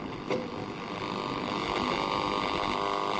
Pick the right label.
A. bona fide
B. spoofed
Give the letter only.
A